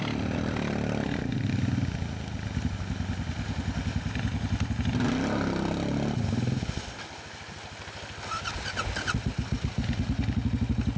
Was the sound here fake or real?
real